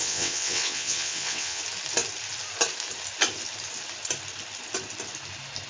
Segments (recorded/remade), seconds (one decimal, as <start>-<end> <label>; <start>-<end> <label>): 0.0-1.6 remade; 1.6-5.7 recorded